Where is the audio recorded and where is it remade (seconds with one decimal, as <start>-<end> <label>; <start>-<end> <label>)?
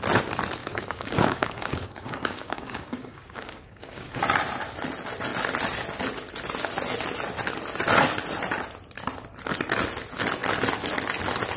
0.0-0.6 recorded; 0.6-4.2 remade; 4.2-11.6 recorded